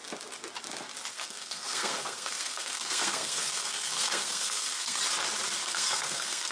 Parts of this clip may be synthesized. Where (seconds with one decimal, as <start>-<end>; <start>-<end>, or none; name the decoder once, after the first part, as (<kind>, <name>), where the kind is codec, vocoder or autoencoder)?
1.1-5.0 (codec, SNAC); 5.6-6.5